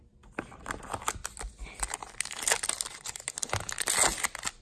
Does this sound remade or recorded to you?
recorded